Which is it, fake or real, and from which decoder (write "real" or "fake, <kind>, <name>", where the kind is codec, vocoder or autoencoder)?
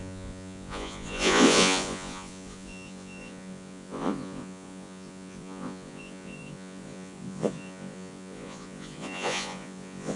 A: fake, vocoder, Vocos